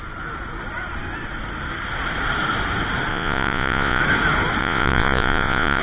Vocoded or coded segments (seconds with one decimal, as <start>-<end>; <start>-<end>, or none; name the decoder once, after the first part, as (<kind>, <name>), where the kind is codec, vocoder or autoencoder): 3.1-4.0 (vocoder, Vocos); 4.6-5.8